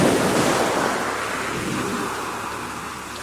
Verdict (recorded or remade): recorded